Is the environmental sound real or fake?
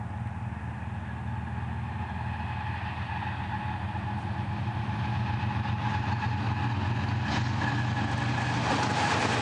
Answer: real